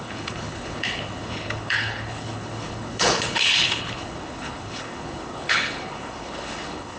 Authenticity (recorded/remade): remade